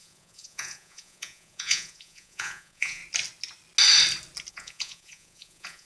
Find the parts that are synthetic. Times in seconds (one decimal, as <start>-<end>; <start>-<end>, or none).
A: 0.0-3.0; 4.5-5.9

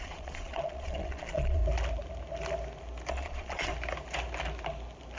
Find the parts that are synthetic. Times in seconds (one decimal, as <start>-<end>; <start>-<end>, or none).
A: 0.0-1.6; 3.1-3.7

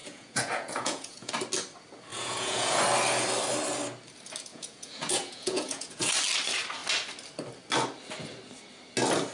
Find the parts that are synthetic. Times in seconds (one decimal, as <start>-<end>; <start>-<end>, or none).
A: 0.0-1.3; 2.1-2.8; 4.5-6.1

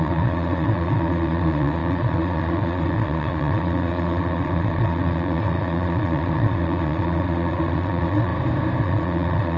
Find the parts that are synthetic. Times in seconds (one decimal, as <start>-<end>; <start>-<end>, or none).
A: 0.0-8.3; 8.8-9.6

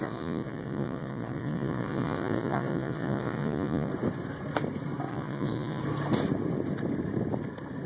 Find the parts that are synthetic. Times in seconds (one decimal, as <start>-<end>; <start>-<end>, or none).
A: 0.0-3.9; 5.1-5.8

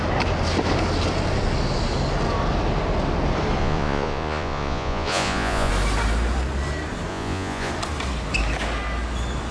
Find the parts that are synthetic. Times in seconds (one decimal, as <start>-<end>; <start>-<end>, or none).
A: 3.6-5.7; 7.1-7.7

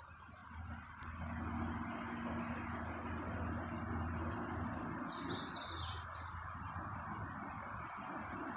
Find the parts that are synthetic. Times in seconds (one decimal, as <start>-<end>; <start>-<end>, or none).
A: none

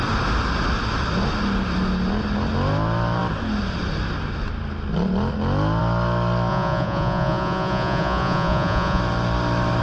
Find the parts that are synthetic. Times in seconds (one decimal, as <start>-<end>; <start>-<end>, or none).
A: 6.5-9.0